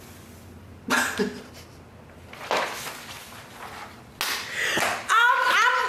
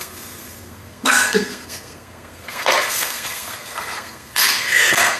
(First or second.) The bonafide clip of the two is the first